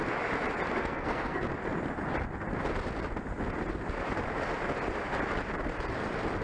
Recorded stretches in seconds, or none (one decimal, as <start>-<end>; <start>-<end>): 0.0-0.8; 1.4-6.4